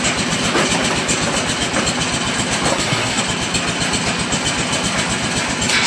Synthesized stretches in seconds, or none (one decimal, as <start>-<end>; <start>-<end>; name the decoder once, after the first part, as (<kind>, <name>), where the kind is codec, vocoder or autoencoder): 2.7-3.2 (codec, SNAC)